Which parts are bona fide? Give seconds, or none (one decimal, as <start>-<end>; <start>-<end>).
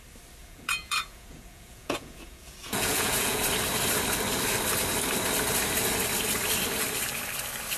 0.0-0.4; 3.4-7.8